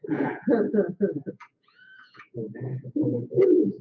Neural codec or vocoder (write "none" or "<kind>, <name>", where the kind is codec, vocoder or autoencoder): vocoder, Vocos